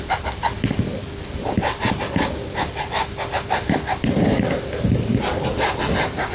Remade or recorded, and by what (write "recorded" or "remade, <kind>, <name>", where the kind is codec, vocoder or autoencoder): recorded